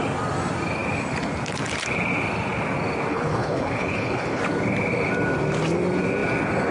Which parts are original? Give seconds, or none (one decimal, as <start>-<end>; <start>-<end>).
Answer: 0.0-3.1; 4.4-6.7